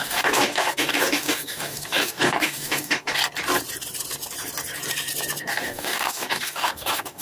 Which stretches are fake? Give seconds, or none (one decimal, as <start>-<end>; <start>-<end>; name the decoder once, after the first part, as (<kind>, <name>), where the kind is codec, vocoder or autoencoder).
0.0-3.2 (codec, DAC); 5.4-7.2

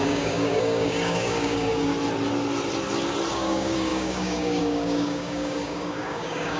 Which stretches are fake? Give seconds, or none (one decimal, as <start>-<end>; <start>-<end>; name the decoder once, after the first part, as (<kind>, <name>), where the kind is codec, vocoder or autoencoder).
0.0-1.9 (codec, DAC); 3.3-6.6

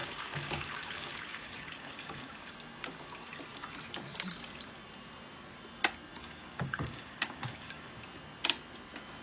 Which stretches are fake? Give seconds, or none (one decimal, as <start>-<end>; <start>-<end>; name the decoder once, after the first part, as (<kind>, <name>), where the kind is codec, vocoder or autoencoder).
0.0-2.5 (codec, DAC); 6.2-7.9